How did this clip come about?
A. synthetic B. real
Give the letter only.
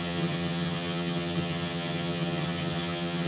A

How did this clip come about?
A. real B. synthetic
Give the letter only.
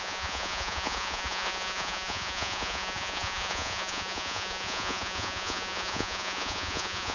B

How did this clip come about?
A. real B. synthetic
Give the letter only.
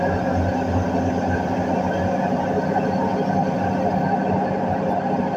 A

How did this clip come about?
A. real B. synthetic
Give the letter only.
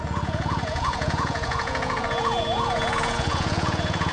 B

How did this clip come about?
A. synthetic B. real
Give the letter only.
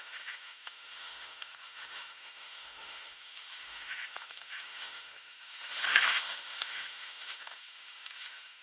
A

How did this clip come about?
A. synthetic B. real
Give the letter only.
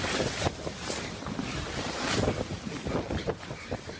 B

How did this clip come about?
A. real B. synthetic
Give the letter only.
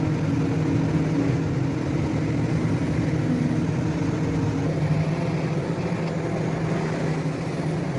A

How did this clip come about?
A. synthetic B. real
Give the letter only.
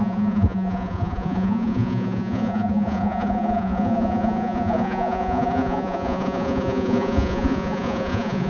A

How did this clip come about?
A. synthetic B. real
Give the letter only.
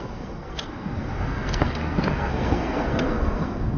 A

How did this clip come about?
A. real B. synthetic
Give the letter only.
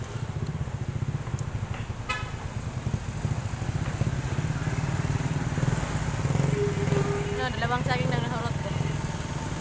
A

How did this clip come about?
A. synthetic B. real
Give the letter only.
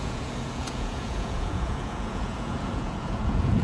A